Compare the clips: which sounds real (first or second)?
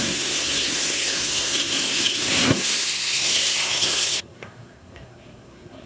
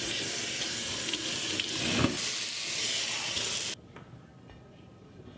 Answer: second